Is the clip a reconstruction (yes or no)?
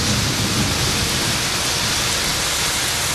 no